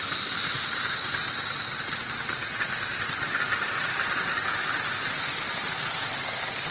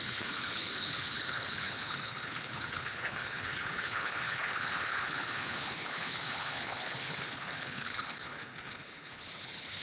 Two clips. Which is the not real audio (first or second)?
second